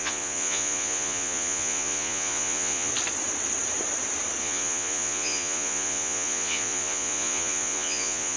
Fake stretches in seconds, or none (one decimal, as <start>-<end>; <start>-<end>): 0.0-2.9; 4.4-8.4